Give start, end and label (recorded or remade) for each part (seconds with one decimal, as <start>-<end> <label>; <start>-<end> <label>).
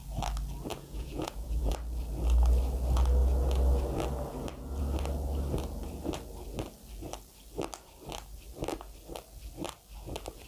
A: 0.0-0.7 recorded; 0.7-1.7 remade; 1.7-10.5 recorded